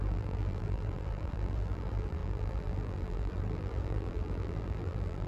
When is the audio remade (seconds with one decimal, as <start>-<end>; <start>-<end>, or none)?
0.0-5.3